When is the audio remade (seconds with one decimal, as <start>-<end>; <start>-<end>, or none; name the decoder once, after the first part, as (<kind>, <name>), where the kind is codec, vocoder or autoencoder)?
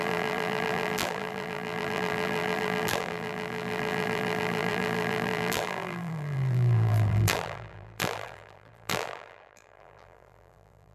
0.0-10.9 (vocoder, BigVGAN v2)